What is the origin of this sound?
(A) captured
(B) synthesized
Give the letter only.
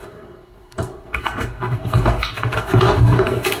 B